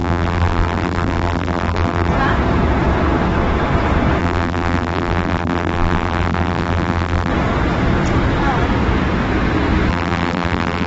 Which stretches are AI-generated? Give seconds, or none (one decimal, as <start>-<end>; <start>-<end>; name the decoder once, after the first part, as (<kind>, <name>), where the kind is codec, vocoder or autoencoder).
0.0-2.1 (vocoder, BigVGAN v2); 4.2-7.3; 9.9-10.9